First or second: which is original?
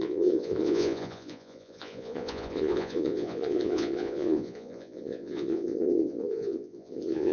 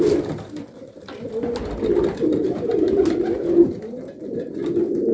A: second